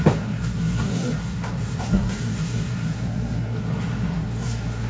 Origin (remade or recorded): remade